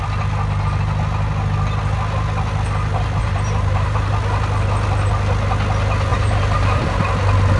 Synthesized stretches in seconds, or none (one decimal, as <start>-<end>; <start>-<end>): 3.2-4.1; 6.1-7.0